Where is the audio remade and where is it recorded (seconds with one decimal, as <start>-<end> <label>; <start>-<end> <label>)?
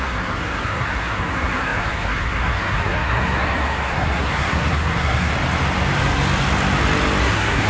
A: 0.0-5.3 remade; 5.3-7.2 recorded; 7.2-7.7 remade